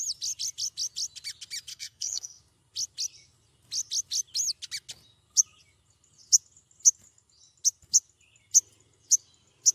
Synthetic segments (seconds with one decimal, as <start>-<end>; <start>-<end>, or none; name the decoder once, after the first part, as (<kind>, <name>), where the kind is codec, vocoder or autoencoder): 1.7-2.4 (codec, SNAC)